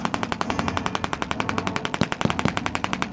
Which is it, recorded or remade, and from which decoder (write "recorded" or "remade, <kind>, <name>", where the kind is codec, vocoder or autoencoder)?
recorded